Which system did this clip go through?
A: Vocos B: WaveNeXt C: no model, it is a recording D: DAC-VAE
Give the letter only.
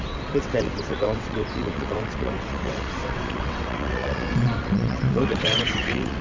B